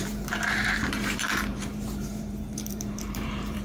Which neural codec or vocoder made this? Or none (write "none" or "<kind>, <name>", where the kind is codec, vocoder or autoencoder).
vocoder, BigVGAN v2